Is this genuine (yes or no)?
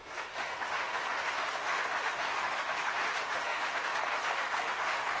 no